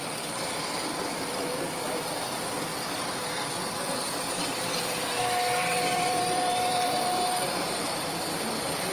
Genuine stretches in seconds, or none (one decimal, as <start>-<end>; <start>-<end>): 0.0-5.6; 8.1-8.9